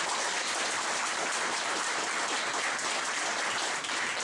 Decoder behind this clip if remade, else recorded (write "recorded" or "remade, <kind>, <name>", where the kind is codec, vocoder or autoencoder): remade, vocoder, BigVGAN v2